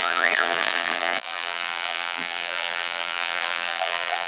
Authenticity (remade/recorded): remade